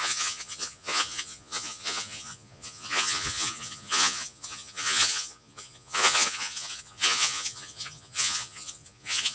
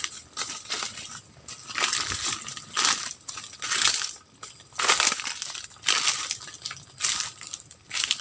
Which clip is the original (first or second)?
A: second